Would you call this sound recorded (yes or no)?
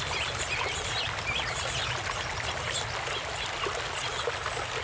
yes